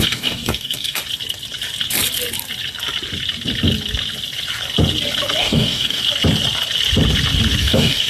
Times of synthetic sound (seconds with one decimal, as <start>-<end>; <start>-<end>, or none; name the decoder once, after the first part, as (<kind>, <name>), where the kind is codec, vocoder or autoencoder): 0.0-1.0 (codec, DAC); 5.4-6.0; 7.6-8.1

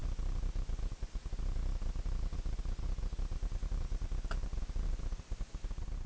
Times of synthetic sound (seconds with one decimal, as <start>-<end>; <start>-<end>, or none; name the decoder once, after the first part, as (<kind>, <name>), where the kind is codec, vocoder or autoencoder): 4.4-5.2 (vocoder, BigVGAN v2)